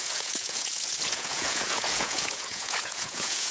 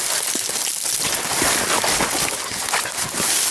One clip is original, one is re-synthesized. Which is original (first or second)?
second